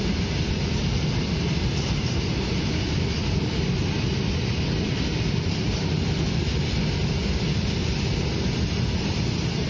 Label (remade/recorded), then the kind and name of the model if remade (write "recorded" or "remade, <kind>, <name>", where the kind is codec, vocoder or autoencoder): recorded